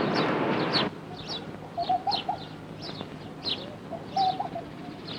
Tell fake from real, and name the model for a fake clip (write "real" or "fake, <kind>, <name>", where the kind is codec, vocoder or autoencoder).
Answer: real